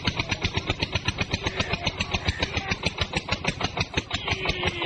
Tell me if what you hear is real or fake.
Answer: real